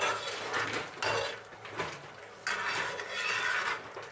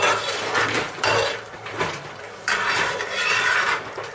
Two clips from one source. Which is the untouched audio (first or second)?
first